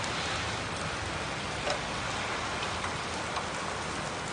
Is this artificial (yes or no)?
no